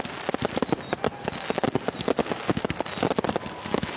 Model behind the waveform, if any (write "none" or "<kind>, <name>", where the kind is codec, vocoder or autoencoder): none